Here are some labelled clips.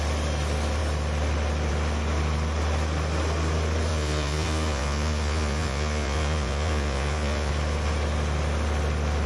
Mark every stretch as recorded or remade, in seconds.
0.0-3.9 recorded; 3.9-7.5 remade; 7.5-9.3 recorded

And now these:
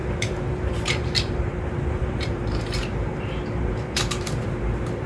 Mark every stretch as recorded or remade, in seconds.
0.0-5.1 remade

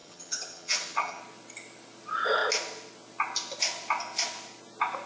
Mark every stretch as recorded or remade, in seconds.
0.0-1.2 remade; 1.2-5.1 recorded

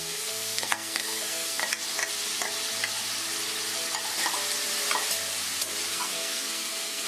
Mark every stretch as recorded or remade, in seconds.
0.0-1.6 remade; 1.6-5.9 recorded; 5.9-7.1 remade